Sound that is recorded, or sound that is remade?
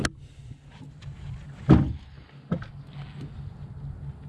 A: recorded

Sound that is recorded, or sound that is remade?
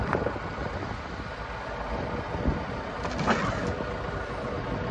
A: recorded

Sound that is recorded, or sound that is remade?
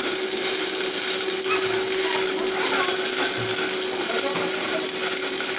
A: recorded